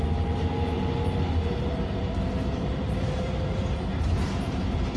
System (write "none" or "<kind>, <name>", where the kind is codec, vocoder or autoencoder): vocoder, BigVGAN v2